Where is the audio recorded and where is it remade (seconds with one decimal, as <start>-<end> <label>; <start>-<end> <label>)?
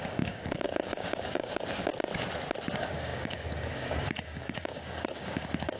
0.0-1.9 remade; 1.9-2.7 recorded; 2.7-5.8 remade